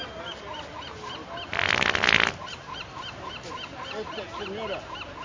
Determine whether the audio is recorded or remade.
recorded